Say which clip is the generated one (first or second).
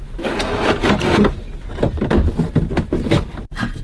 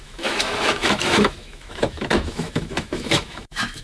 second